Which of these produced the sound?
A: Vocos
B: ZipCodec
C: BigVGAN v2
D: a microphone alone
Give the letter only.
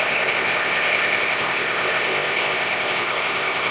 B